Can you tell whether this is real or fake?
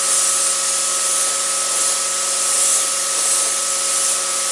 real